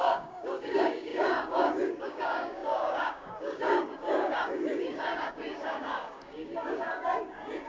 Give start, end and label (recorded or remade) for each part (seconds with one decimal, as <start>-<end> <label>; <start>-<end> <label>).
0.0-7.7 remade